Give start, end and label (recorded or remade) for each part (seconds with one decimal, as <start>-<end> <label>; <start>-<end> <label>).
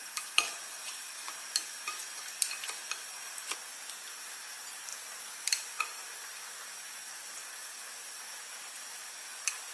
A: 0.0-4.9 recorded; 4.9-5.8 remade; 5.8-7.4 recorded; 7.4-8.2 remade; 8.2-9.7 recorded